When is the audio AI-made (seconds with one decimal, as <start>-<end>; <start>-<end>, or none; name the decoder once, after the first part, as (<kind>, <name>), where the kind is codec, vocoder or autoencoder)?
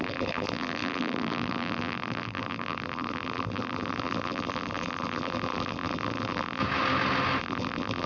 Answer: 0.0-6.6 (vocoder, BigVGAN v2); 7.4-8.1